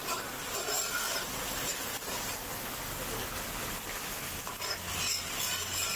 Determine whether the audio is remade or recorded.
recorded